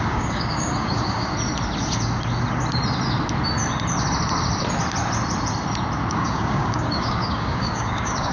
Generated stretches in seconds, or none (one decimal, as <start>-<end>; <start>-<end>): 0.0-1.3; 6.1-8.3